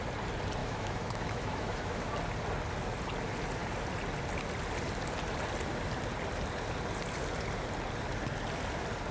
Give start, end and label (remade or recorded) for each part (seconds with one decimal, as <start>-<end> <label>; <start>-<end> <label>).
0.0-0.6 recorded; 0.6-2.1 remade; 2.1-9.1 recorded

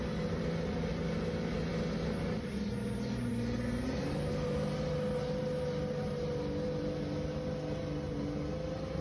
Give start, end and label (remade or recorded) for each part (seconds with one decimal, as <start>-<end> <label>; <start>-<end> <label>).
0.0-9.0 recorded